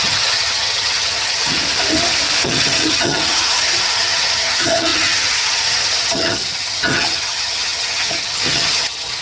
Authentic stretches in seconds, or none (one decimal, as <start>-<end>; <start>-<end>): 1.6-2.4